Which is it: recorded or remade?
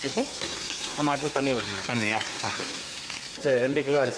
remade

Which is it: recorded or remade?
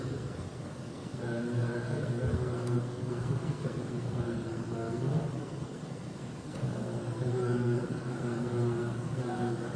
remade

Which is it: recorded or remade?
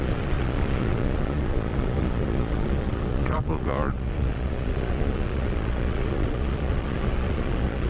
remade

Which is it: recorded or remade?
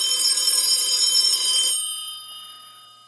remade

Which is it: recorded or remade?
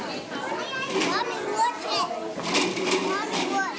recorded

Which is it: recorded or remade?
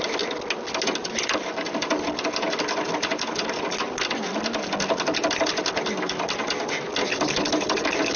recorded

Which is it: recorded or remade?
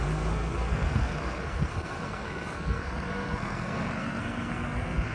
remade